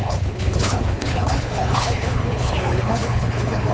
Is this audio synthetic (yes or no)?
yes